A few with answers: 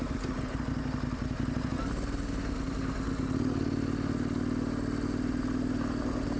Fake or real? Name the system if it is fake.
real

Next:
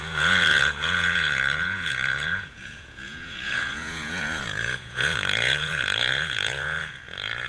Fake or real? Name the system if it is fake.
fake, vocoder, Vocos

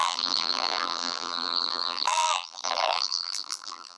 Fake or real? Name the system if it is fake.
fake, vocoder, BigVGAN v2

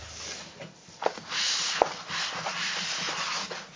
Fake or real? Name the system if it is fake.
real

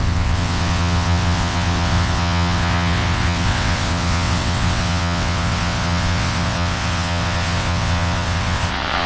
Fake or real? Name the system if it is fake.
fake, vocoder, WaveNeXt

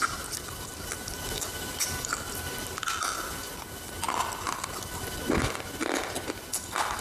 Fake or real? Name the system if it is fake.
real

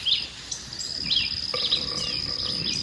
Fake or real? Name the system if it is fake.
real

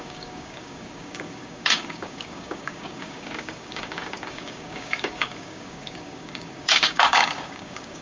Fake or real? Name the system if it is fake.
fake, codec, DAC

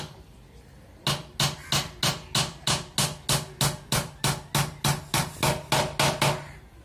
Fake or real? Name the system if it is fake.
real